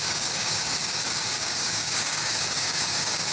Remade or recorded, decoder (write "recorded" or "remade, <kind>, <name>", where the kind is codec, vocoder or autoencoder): remade, codec, DAC